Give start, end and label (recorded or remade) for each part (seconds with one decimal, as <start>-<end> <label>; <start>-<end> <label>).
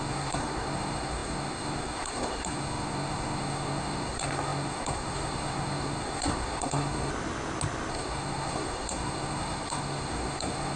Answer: 0.0-7.1 remade; 7.1-7.9 recorded; 7.9-10.8 remade